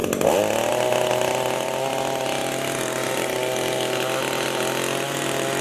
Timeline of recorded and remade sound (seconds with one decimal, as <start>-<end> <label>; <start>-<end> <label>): 0.0-5.6 recorded